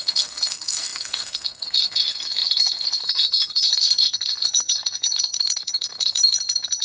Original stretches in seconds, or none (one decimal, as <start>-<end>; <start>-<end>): none